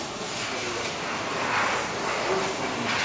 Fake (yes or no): no